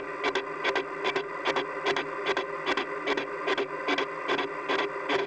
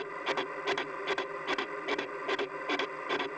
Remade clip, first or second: second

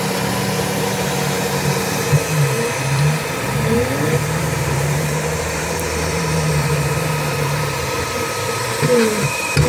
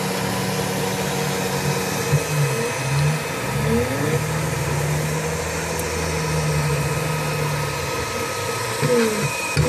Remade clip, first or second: first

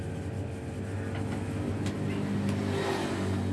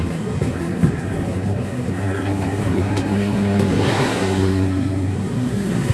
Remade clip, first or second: second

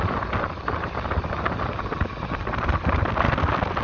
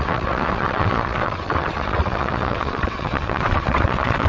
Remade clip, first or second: second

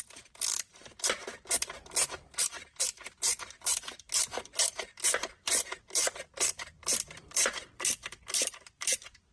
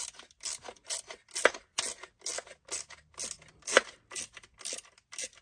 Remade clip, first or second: first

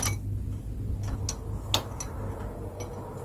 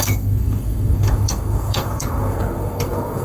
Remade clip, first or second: second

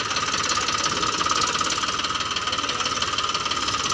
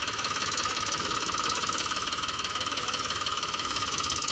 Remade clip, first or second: second